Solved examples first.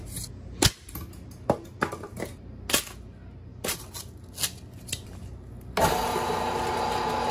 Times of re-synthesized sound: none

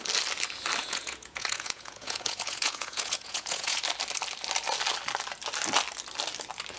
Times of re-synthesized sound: 0.8-3.8 (vocoder, Vocos)

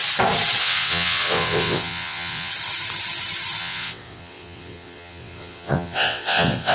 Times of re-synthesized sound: 0.6-2.5 (vocoder, WaveNeXt); 3.6-6.7

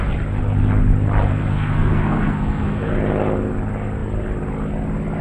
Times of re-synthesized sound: 1.3-2.9 (codec, SNAC)

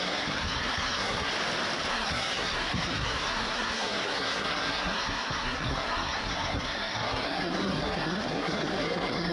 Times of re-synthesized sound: 0.0-1.3 (codec, SNAC); 1.9-9.3

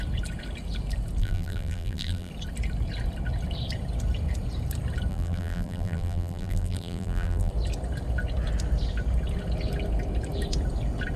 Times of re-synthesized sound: 1.2-2.3 (vocoder, BigVGAN v2); 5.1-7.5